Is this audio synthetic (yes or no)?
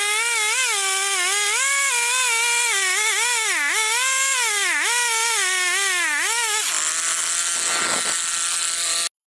no